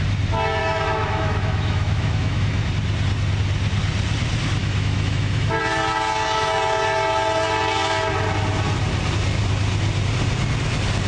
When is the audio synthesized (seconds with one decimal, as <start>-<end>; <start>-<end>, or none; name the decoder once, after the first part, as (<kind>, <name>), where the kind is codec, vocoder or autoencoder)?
0.6-2.7 (autoencoder, DAC-VAE); 4.6-5.6